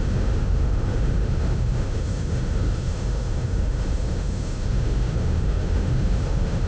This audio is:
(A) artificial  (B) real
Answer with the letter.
A